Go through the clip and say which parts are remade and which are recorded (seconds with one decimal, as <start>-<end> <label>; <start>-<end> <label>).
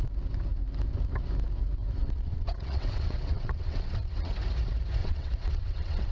0.0-2.0 recorded; 2.0-4.3 remade; 4.3-5.0 recorded; 5.0-6.1 remade